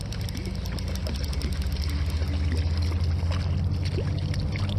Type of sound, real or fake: real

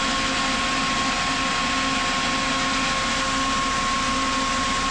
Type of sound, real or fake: real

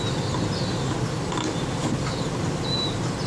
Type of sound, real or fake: real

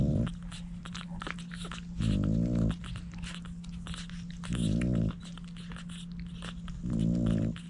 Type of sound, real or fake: real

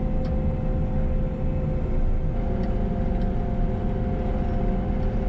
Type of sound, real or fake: real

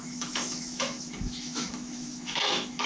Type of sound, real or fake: fake